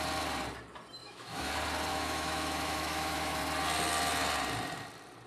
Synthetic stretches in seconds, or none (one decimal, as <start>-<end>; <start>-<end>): 1.0-1.5; 1.9-3.4